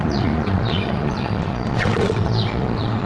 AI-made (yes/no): yes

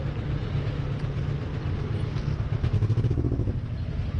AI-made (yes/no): no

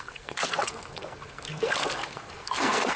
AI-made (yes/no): yes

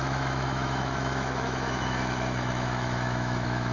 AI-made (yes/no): yes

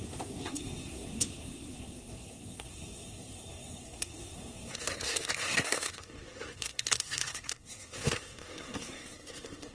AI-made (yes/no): yes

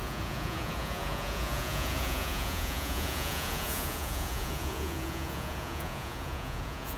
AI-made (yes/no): yes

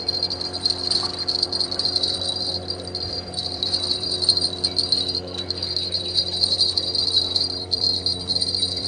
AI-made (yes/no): yes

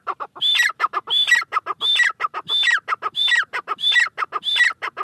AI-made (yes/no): yes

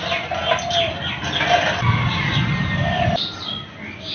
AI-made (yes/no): no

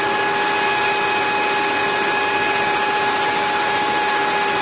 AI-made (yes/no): no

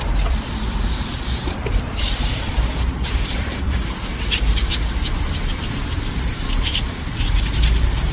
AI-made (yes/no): no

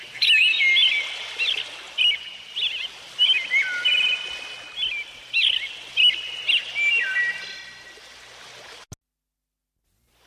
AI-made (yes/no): no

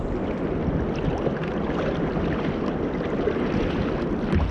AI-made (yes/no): no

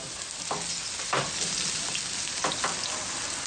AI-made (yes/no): no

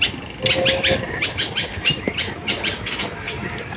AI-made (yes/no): no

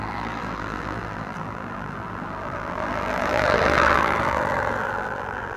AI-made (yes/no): yes